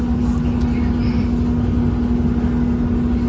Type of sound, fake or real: real